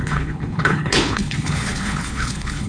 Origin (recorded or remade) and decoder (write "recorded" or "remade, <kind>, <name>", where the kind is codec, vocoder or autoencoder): remade, codec, HILCodec